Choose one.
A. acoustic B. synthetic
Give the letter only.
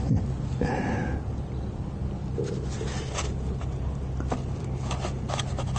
A